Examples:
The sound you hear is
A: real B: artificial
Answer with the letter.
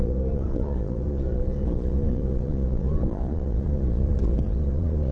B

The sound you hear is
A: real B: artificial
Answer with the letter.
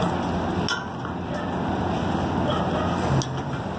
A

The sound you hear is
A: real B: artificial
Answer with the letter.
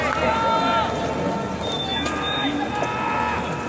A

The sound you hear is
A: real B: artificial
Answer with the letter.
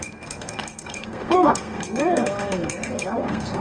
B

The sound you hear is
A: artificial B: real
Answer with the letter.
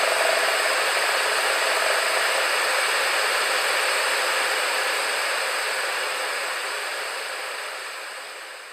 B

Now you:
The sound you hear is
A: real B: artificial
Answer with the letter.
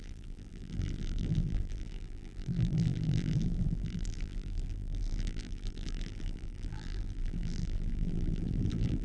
B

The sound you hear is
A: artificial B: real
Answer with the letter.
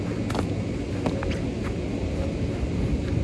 B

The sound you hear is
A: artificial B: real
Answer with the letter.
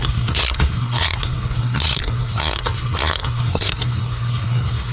A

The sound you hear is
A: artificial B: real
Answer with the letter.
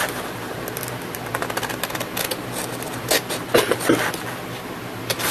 B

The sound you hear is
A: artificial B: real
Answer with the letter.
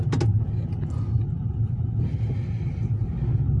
B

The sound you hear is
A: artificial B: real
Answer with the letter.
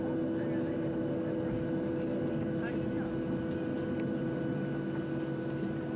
B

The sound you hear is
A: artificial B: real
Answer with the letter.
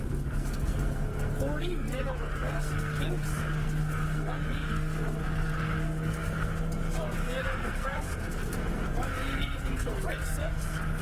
A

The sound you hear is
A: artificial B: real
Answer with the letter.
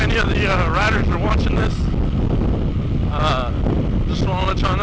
B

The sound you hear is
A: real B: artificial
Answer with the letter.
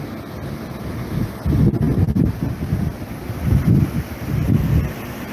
A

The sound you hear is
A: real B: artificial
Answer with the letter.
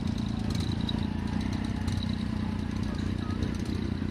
A